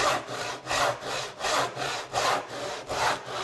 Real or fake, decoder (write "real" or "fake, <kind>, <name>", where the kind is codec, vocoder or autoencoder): real